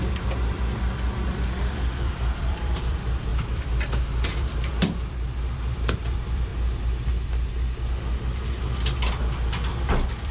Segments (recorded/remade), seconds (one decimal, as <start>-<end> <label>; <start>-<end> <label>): 0.0-6.5 remade; 6.5-9.2 recorded; 9.2-10.3 remade